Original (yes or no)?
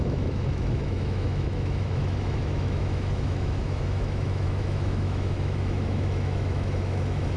no